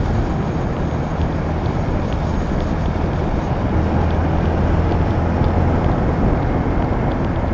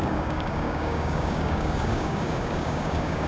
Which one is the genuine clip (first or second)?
first